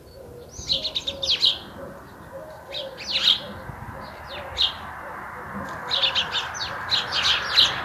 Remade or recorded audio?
recorded